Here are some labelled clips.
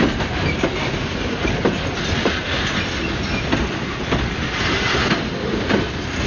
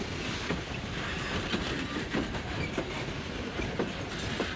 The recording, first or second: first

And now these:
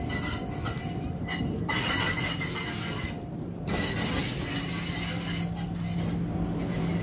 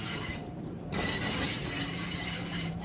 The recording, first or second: first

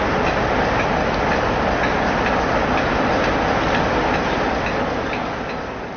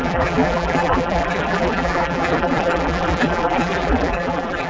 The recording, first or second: first